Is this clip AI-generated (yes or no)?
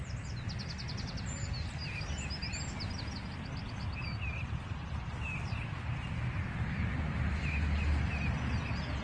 no